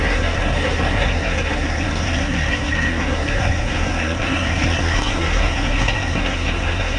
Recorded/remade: remade